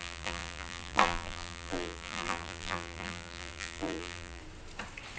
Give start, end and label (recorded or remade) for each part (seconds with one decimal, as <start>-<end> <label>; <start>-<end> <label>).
0.0-4.4 remade; 4.4-5.2 recorded